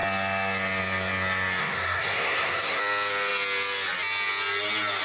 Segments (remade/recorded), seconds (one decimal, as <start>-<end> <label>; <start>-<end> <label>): 0.0-1.6 recorded; 1.6-2.8 remade; 2.8-5.0 recorded